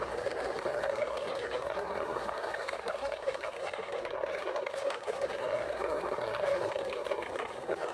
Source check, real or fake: fake